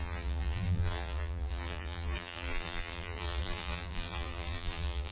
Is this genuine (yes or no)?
no